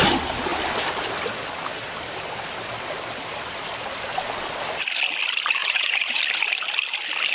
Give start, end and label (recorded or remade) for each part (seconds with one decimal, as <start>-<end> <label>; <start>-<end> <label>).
0.0-5.6 recorded; 5.6-6.2 remade; 6.2-7.3 recorded